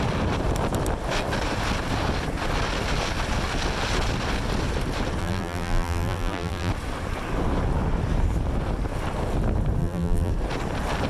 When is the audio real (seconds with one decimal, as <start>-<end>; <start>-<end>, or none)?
0.0-5.2; 6.7-9.8; 10.3-11.1